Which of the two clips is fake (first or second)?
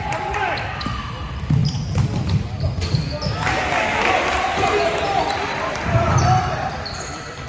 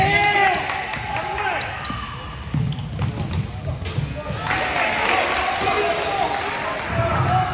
first